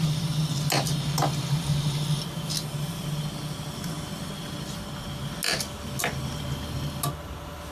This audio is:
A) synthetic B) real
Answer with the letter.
B